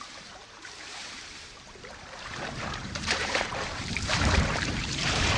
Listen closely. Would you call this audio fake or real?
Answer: fake